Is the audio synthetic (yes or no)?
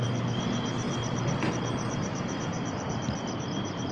no